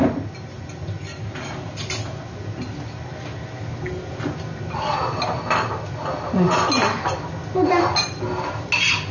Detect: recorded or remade recorded